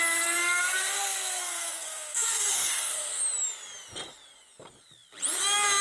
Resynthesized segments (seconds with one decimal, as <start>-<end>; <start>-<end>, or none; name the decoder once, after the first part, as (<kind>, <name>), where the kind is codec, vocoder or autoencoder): 0.4-3.2 (codec, SNAC)